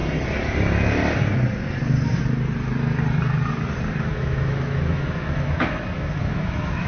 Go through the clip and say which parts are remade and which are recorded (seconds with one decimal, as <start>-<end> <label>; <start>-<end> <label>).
0.0-4.0 recorded; 4.0-6.9 remade